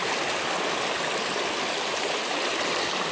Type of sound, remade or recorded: recorded